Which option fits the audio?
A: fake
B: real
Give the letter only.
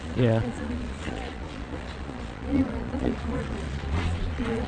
A